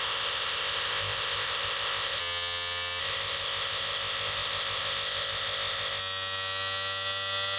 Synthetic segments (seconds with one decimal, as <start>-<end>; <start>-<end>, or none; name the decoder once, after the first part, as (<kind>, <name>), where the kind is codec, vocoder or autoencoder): 0.0-2.2 (codec, ZipCodec); 3.0-6.0